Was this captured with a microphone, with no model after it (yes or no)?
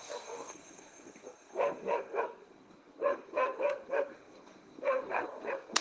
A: no